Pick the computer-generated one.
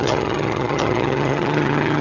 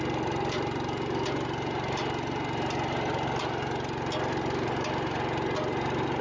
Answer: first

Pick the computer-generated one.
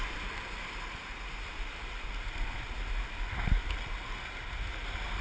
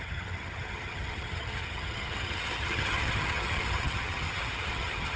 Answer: second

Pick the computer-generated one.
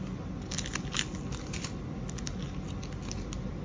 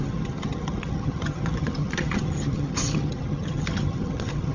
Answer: second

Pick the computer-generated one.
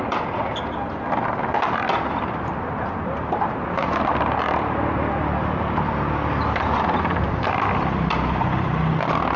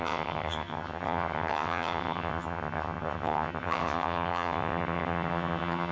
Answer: second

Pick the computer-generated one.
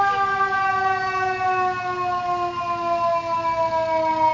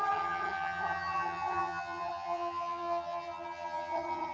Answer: second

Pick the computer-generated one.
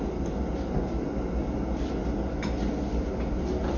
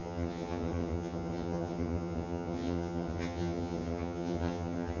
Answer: second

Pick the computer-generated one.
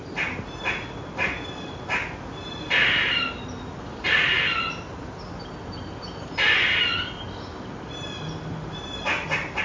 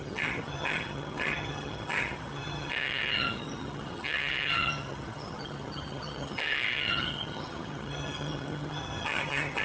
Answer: second